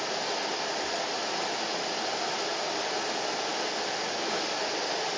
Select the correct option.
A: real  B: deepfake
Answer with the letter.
A